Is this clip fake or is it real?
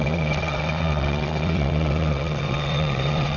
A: fake